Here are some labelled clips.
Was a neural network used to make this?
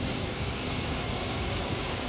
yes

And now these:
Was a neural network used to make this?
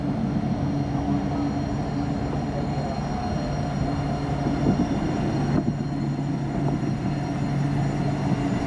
no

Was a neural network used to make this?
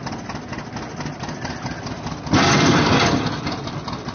no